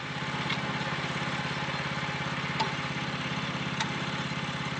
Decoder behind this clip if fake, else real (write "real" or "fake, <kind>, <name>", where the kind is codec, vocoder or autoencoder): real